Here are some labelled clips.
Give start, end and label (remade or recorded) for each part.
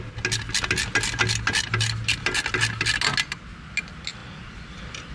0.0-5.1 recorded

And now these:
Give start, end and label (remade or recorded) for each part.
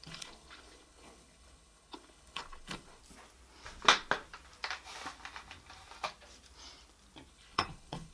0.0-3.0 remade; 3.0-7.3 recorded; 7.3-8.1 remade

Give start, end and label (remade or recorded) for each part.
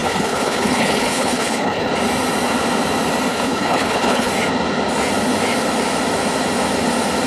0.0-1.9 remade; 1.9-3.3 recorded; 3.3-4.3 remade; 4.3-7.3 recorded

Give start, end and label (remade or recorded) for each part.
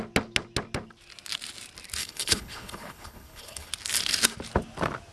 0.0-2.0 recorded; 2.0-3.7 remade; 3.7-5.1 recorded